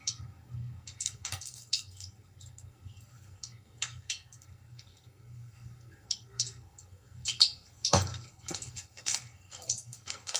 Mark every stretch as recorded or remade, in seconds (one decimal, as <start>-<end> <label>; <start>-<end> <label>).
0.0-10.4 remade